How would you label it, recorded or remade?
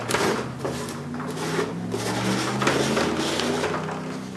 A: recorded